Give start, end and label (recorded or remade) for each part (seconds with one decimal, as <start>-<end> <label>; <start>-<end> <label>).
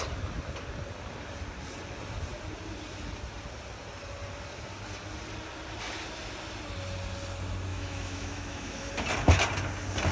0.0-7.7 recorded; 7.7-8.9 remade; 8.9-10.1 recorded